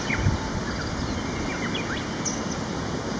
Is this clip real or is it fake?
real